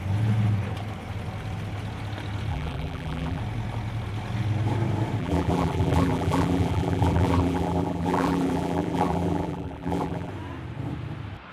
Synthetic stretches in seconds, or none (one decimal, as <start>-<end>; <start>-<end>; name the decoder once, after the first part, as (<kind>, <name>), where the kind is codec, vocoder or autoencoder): 2.5-3.4 (vocoder, BigVGAN v2); 5.2-10.3